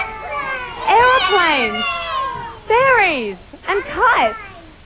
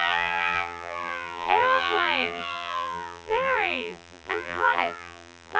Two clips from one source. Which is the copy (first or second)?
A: second